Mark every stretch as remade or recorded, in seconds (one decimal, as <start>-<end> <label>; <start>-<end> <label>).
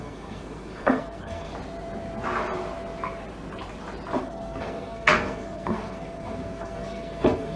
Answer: 0.0-1.5 remade; 1.5-4.2 recorded; 4.2-7.6 remade